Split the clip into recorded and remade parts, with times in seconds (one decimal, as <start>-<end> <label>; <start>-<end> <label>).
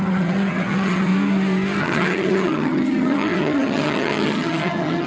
0.0-1.1 remade; 1.1-1.8 recorded; 1.8-5.1 remade